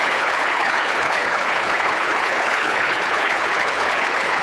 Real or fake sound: fake